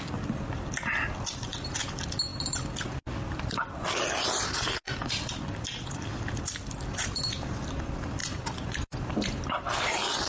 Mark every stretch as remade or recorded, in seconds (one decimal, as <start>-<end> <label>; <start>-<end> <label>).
0.0-8.2 recorded; 8.2-9.7 remade; 9.7-10.3 recorded